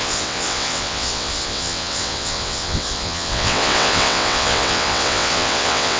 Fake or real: fake